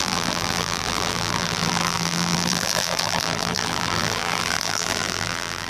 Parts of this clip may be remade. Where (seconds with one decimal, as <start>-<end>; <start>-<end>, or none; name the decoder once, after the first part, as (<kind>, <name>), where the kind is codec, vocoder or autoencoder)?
0.0-5.7 (vocoder, BigVGAN v2)